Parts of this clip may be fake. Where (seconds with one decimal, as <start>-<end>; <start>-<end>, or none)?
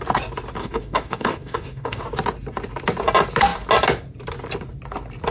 0.6-2.0